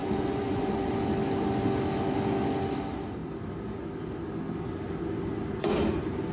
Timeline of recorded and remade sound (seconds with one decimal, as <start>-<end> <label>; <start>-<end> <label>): 0.0-0.9 remade; 0.9-6.3 recorded